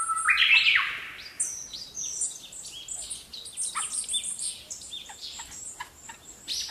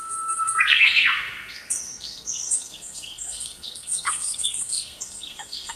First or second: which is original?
first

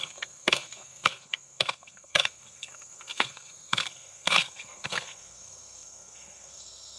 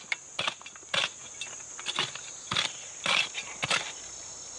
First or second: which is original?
second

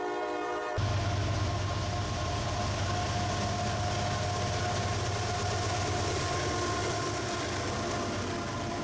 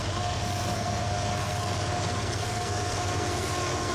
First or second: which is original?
first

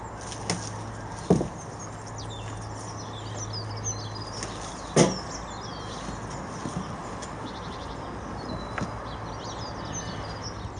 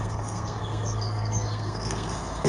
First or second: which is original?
first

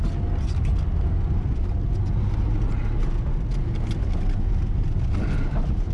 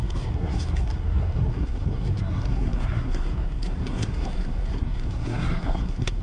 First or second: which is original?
first